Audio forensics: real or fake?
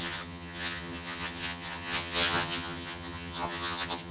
fake